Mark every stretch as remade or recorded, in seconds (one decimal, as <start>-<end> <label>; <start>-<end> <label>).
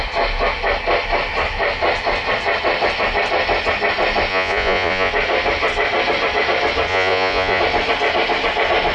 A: 0.0-4.3 recorded; 4.3-5.1 remade; 5.1-6.9 recorded; 6.9-7.6 remade; 7.6-8.9 recorded